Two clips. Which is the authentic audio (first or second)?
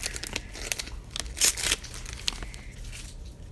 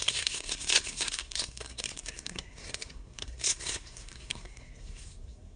first